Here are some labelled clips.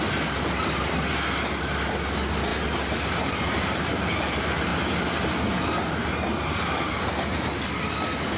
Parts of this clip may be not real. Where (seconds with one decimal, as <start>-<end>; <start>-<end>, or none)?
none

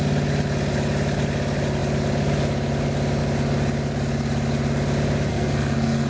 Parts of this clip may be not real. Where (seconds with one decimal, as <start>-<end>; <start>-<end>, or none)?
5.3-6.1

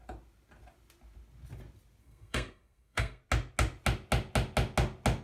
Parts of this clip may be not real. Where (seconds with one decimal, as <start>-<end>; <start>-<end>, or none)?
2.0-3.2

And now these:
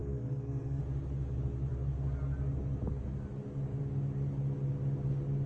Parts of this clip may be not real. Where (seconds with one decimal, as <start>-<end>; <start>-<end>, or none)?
0.0-0.8

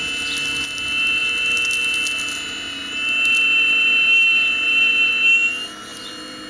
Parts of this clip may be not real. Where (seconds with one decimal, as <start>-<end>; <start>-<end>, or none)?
none

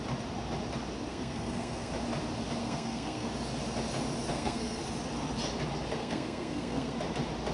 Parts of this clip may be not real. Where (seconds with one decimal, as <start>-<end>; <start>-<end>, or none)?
1.1-1.9; 2.6-3.3; 4.3-4.8; 6.0-7.0

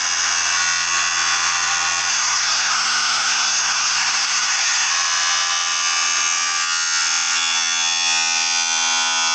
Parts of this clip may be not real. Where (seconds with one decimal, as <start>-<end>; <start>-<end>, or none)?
2.1-4.9

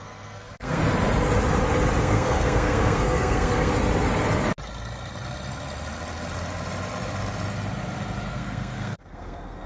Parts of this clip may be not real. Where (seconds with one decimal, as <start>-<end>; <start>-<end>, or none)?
0.0-0.8; 2.0-3.7; 8.3-9.7